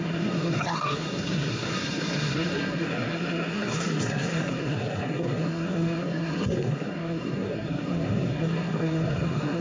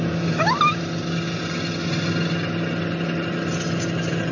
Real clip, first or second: second